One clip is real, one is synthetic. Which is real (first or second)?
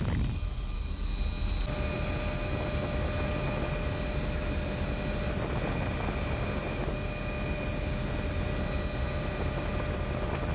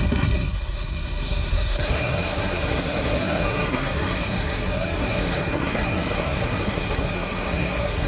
first